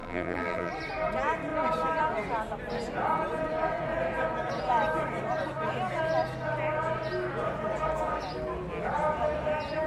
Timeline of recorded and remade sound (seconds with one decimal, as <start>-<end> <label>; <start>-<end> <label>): 0.0-0.7 remade; 0.7-9.9 recorded